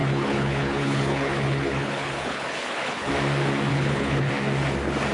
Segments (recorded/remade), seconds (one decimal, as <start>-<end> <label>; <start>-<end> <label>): 0.0-3.1 remade; 3.1-3.7 recorded; 3.7-4.3 remade; 4.3-5.1 recorded